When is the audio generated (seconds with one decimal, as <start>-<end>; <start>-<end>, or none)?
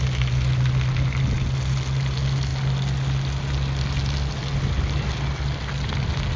none